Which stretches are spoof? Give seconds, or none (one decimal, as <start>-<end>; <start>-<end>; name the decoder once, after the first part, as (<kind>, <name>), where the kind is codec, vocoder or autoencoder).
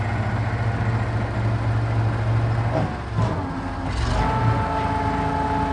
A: none